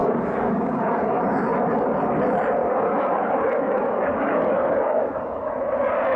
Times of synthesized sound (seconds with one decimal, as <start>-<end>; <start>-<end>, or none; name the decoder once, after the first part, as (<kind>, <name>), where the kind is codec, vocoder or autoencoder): 0.0-1.2 (codec, DAC); 2.6-5.5